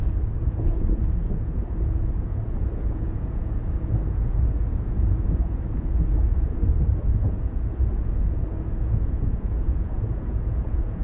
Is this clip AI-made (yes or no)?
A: yes